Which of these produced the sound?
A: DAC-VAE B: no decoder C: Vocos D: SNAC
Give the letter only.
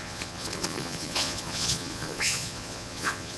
C